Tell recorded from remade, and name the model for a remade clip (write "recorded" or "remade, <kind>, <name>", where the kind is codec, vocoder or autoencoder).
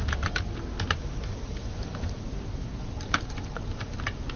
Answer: recorded